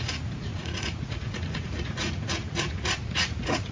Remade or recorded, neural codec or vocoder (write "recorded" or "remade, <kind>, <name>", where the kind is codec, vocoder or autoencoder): remade, vocoder, Vocos